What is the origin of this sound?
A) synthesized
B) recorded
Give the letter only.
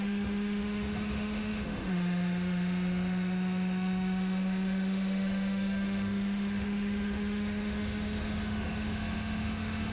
A